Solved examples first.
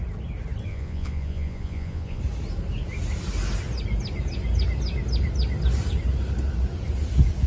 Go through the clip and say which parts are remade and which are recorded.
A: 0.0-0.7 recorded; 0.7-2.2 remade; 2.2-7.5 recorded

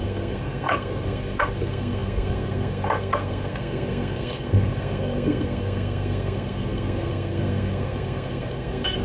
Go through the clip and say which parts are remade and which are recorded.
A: 0.0-9.0 remade

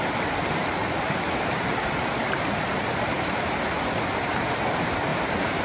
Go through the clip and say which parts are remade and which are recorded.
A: 0.0-0.8 recorded; 0.8-1.6 remade; 1.6-5.1 recorded; 5.1-5.6 remade